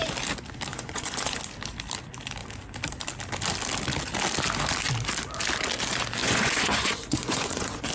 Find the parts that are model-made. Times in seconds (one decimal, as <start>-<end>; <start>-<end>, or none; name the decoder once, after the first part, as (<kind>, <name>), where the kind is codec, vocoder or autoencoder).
0.7-1.4 (vocoder, Vocos); 6.2-7.9